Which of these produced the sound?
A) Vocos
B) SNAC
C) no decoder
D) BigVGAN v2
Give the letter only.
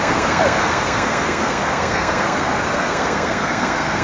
B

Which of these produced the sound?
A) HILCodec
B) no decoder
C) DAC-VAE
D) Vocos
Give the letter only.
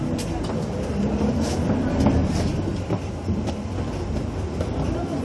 B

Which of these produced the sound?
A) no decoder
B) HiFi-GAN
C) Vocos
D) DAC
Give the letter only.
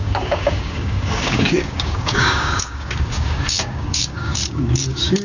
D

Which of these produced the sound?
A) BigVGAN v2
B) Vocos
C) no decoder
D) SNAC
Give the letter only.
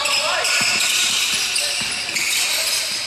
C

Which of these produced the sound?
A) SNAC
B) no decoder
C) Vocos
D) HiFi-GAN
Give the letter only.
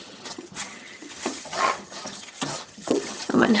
D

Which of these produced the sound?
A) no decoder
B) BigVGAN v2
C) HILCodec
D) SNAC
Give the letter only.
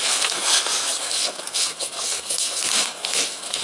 D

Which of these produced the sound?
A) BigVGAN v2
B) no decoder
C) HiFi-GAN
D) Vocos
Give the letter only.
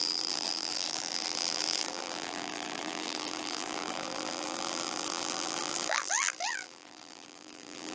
A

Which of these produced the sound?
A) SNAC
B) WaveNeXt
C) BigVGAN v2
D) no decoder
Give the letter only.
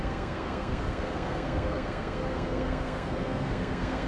A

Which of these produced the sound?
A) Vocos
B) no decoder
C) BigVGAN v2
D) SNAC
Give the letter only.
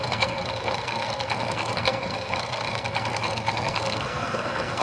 D